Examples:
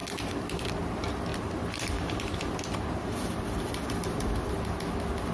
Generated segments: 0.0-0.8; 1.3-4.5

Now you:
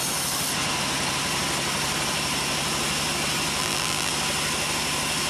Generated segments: 3.6-4.1

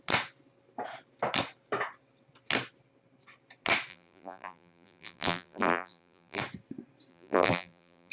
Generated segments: 3.9-6.4; 7.1-8.1

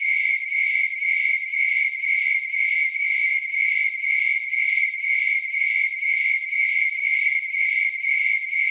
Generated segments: 0.0-8.7

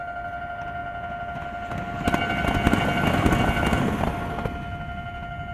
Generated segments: none

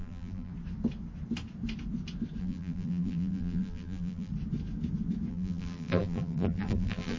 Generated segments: 0.0-0.5; 2.4-4.3; 5.3-7.2